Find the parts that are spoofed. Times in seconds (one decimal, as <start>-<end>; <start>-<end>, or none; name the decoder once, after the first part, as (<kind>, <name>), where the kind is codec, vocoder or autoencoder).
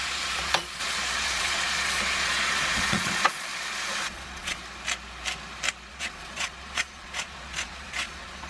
0.0-3.5 (vocoder, Vocos); 4.0-4.6; 5.9-8.5